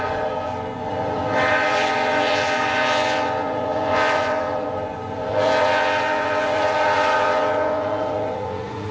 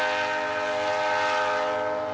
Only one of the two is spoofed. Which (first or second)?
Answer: first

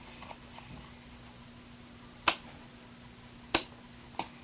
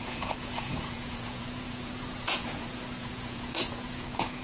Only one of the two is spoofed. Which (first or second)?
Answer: second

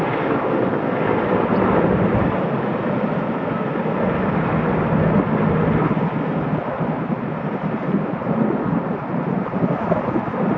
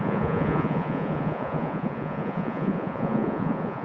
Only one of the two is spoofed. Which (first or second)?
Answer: second